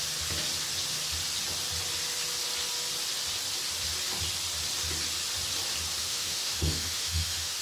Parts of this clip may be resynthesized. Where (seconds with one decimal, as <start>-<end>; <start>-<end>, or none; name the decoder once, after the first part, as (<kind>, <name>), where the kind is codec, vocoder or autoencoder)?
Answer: 6.0-7.6 (autoencoder, DAC-VAE)